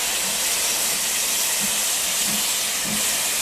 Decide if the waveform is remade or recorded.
recorded